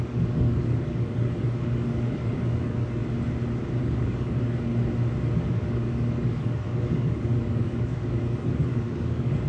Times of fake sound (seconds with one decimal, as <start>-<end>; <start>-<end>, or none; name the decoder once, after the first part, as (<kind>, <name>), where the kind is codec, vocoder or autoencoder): 0.0-3.0 (codec, DAC); 3.8-4.7; 5.5-9.5